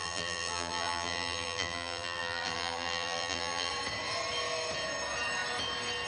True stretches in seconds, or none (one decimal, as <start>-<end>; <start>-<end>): 3.7-6.1